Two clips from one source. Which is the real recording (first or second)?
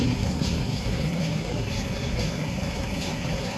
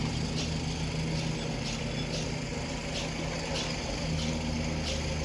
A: second